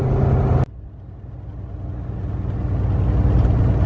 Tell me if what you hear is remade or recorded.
recorded